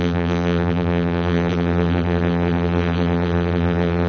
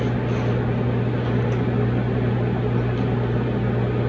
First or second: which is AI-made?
first